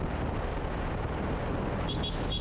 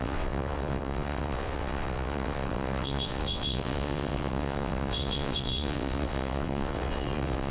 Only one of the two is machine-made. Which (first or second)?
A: second